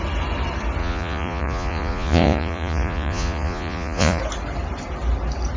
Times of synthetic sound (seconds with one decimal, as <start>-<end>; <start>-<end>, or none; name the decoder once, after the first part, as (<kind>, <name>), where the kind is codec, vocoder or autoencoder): 0.8-4.2 (vocoder, Vocos)